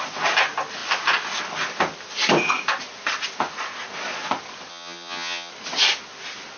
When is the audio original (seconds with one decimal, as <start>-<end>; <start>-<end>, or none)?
0.0-4.7; 5.5-6.6